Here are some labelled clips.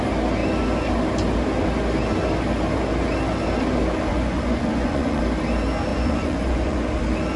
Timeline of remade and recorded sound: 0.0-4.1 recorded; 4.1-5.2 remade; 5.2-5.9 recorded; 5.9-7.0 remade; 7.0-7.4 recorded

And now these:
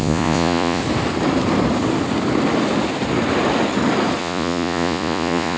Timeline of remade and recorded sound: 0.0-0.8 remade; 0.8-4.2 recorded; 4.2-5.6 remade

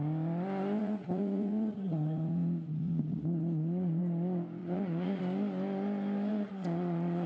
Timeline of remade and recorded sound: 0.0-0.8 recorded; 0.8-4.0 remade; 4.0-4.6 recorded; 4.6-5.2 remade; 5.2-6.3 recorded; 6.3-7.3 remade

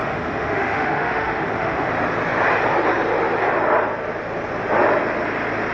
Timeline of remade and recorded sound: 0.0-1.9 remade; 1.9-5.7 recorded

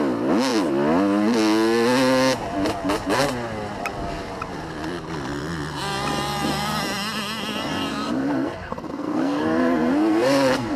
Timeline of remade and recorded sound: 0.0-7.9 recorded; 7.9-10.8 remade

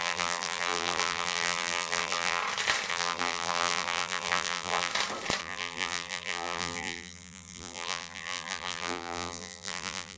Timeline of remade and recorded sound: 0.0-2.4 remade; 2.4-2.9 recorded; 2.9-4.9 remade; 4.9-5.4 recorded; 5.4-10.2 remade